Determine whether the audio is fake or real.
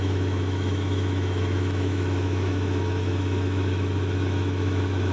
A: fake